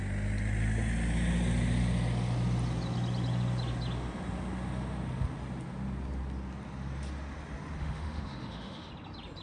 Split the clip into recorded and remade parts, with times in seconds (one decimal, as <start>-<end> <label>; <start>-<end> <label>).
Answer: 0.0-7.8 recorded; 7.8-8.9 remade; 8.9-9.4 recorded